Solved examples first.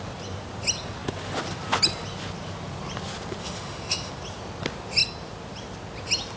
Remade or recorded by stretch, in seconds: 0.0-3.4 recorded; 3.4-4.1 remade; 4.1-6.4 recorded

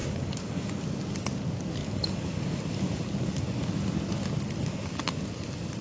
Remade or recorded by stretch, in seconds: 0.0-0.7 remade; 0.7-1.8 recorded; 1.8-2.6 remade; 2.6-5.8 recorded

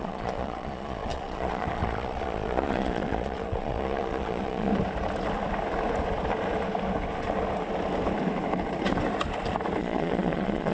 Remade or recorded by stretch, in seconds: 0.0-4.7 remade; 4.7-9.8 recorded; 9.8-10.7 remade

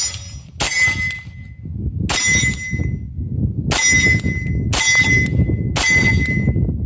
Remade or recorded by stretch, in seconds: 0.0-6.9 recorded

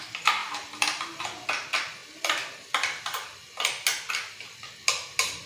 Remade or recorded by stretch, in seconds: 0.0-0.4 recorded; 0.4-1.2 remade; 1.2-5.5 recorded

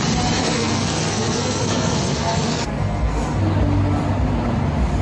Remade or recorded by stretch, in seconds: 0.0-0.4 recorded; 0.4-3.4 remade; 3.4-5.0 recorded